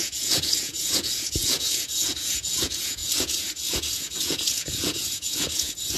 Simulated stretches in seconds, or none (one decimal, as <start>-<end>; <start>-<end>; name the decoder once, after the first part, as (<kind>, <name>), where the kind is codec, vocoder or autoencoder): 0.0-6.0 (vocoder, Vocos)